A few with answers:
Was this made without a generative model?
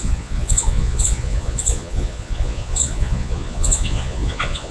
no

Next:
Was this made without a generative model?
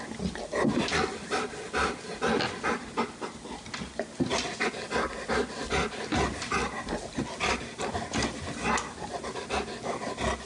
yes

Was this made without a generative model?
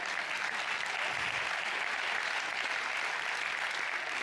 yes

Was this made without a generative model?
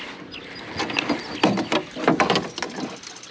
yes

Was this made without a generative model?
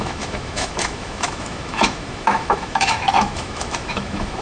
no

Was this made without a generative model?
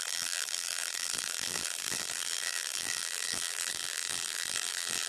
no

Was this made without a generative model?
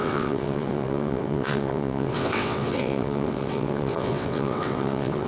no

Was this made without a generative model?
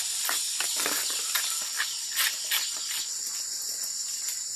yes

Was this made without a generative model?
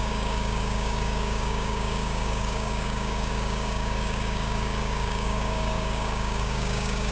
no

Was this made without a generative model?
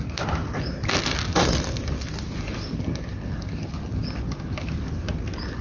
yes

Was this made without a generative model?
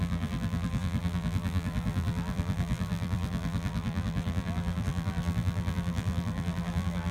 no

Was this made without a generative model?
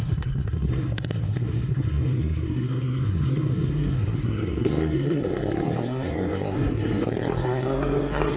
no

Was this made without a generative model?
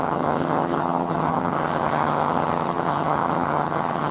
no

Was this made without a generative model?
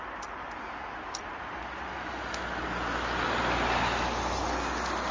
yes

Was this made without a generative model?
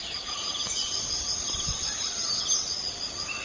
yes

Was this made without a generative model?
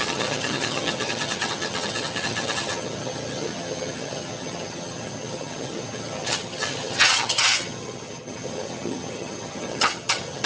no